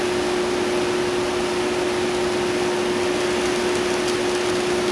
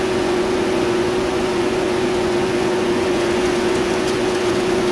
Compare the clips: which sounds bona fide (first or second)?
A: first